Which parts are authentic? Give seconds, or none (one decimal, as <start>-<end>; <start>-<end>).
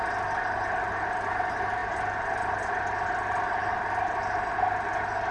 0.0-5.3